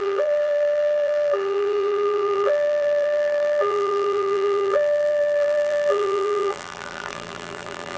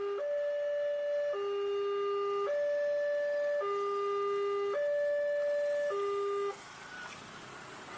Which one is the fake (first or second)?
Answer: first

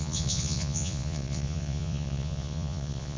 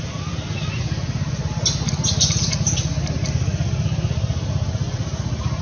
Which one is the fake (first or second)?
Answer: first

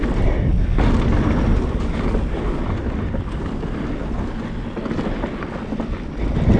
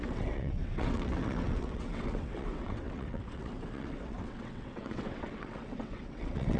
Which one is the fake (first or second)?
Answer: second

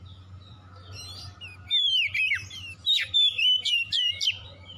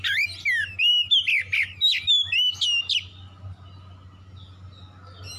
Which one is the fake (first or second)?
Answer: first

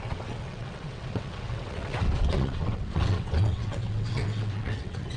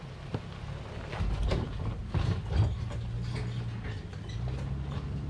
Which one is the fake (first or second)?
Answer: first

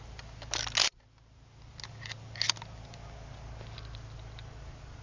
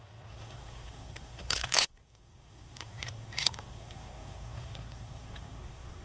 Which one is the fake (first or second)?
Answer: second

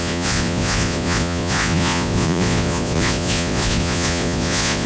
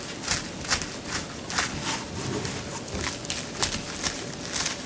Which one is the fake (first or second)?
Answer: first